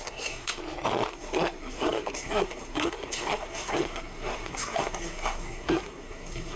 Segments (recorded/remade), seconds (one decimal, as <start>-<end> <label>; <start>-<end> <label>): 0.0-0.6 remade; 0.6-1.1 recorded; 1.1-6.6 remade